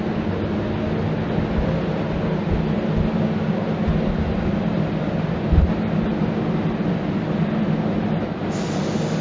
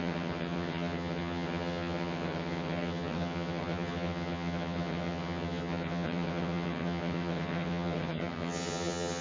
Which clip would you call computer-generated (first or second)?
second